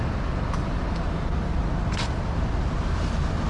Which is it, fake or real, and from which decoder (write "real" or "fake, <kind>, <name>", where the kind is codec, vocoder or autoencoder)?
real